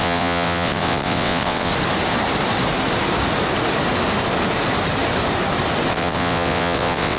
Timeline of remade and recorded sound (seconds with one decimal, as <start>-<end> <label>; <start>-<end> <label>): 0.0-1.7 remade; 1.7-5.9 recorded; 5.9-7.2 remade